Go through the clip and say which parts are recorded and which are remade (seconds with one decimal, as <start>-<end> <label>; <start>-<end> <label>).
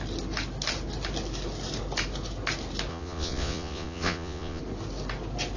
0.0-2.9 recorded; 2.9-4.6 remade; 4.6-5.6 recorded